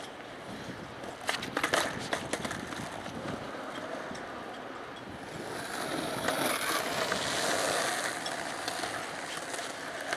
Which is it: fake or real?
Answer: real